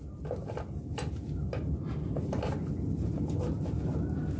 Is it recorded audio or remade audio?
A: recorded